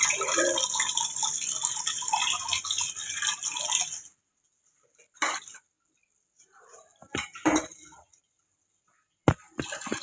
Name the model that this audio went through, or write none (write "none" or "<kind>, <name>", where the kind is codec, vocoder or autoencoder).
none